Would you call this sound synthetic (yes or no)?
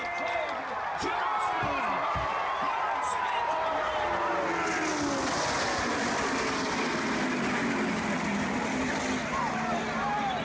no